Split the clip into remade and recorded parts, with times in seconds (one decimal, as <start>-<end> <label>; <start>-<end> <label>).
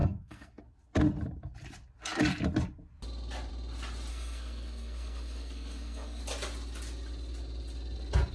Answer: 0.0-0.6 remade; 0.6-4.1 recorded; 4.1-6.2 remade; 6.2-8.3 recorded